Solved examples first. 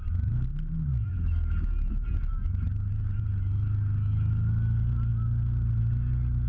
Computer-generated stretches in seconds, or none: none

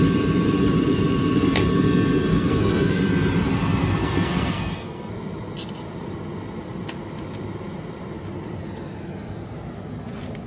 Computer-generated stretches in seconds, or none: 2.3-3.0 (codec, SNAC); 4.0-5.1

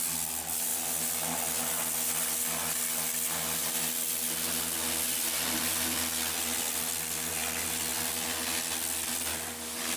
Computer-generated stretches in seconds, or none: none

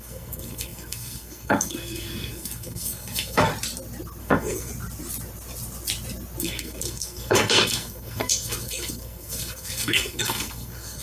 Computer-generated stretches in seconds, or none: 0.0-3.5 (codec, SNAC); 4.2-4.7; 6.4-11.0